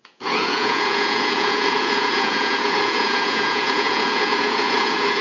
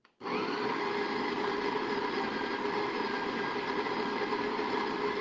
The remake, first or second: first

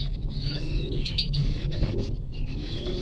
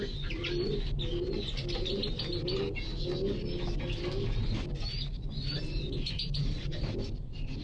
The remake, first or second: first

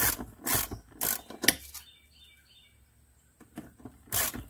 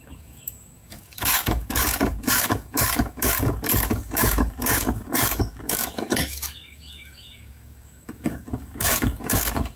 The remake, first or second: second